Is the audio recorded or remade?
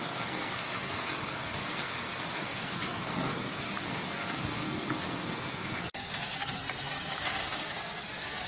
remade